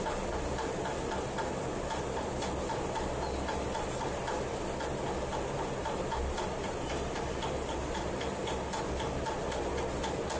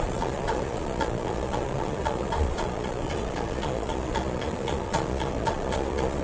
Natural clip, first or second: first